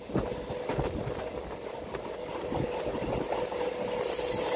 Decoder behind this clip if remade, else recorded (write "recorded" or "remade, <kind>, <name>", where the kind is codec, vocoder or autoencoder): recorded